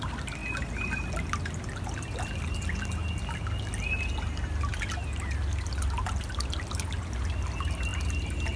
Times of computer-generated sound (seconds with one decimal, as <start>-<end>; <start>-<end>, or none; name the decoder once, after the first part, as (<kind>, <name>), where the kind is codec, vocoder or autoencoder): none